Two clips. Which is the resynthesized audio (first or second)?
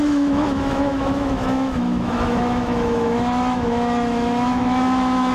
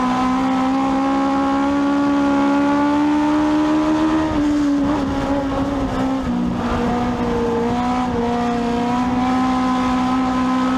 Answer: first